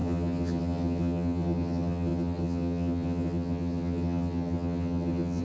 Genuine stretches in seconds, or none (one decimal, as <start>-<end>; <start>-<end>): none